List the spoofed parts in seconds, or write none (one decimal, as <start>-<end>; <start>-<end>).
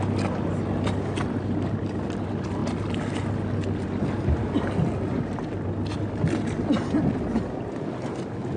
none